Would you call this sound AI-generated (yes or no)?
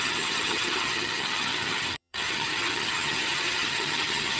yes